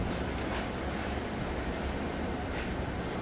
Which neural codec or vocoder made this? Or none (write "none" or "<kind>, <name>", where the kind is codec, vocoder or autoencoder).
vocoder, BigVGAN v2